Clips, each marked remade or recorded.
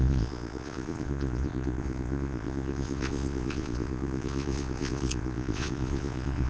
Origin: remade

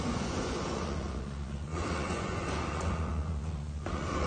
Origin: remade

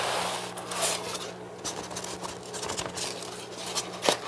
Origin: recorded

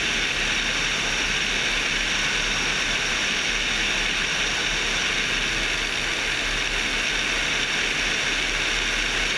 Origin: recorded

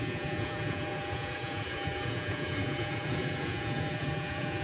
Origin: remade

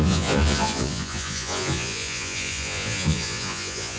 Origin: remade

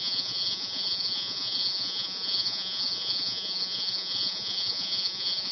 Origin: remade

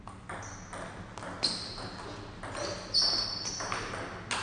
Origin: recorded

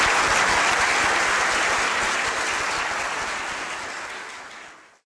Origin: recorded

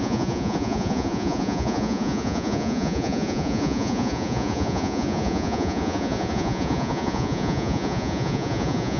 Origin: remade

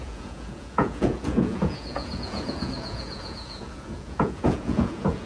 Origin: remade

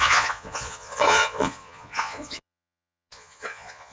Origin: remade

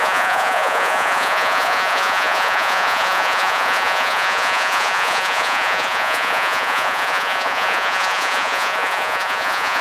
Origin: remade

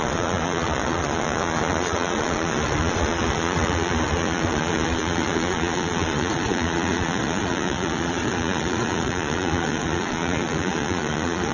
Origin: remade